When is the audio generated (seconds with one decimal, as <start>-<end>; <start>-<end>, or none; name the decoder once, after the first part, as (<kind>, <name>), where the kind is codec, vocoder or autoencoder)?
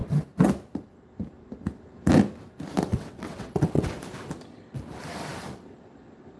2.9-3.9 (vocoder, WaveNeXt)